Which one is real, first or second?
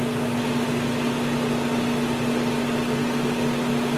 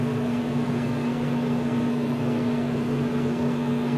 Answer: first